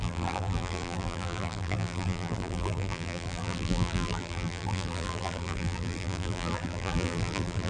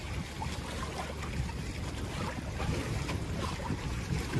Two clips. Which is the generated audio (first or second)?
first